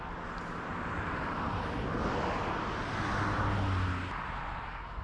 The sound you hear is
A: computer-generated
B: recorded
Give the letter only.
B